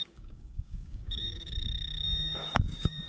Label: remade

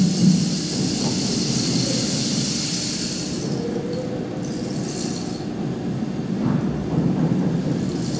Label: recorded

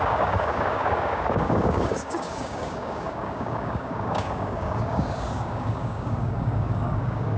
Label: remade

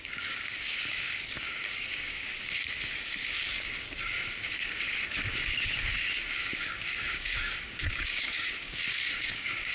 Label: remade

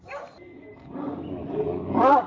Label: recorded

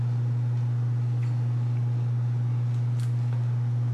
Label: recorded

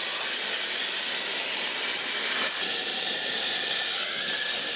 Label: recorded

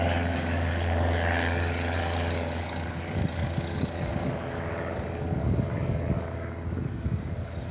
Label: remade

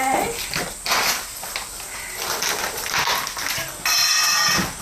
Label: recorded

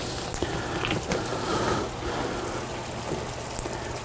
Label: recorded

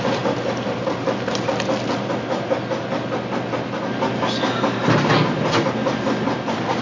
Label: recorded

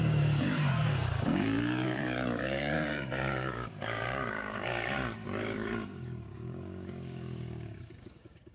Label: remade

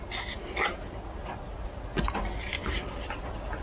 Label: recorded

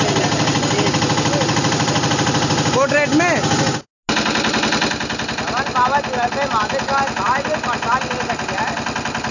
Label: recorded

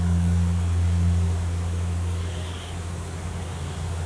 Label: remade